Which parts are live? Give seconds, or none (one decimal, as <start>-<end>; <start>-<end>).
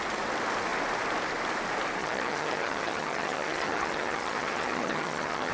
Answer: 0.0-2.0